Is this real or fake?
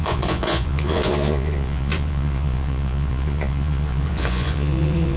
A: fake